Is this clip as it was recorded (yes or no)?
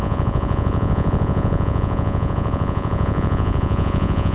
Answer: no